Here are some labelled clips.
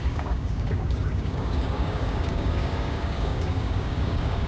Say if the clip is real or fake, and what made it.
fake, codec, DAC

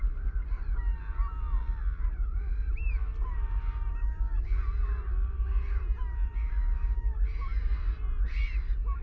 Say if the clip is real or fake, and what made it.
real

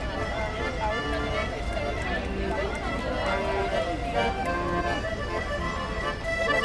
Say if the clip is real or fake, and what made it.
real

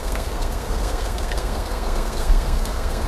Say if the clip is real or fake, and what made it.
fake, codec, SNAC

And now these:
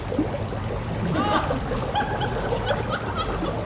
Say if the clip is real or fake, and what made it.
real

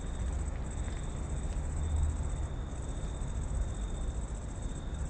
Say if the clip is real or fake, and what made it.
real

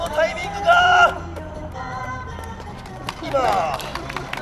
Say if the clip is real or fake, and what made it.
real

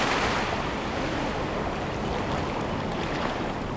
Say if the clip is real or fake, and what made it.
real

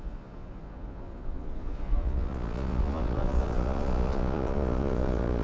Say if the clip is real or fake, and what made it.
fake, vocoder, Vocos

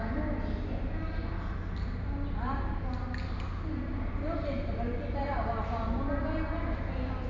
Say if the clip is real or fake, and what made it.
real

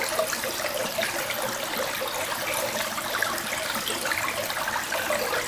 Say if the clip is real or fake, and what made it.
real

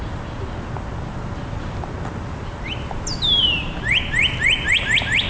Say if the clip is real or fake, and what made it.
real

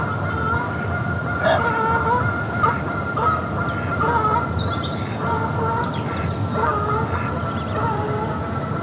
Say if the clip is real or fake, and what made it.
real